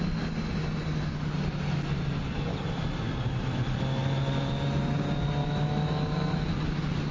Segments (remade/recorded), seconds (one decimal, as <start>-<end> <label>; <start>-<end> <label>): 0.0-5.4 recorded; 5.4-6.5 remade; 6.5-7.1 recorded